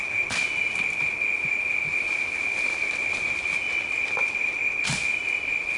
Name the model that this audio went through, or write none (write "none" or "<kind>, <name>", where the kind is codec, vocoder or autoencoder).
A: none